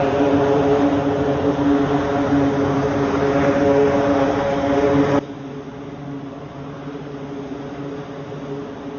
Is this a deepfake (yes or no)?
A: no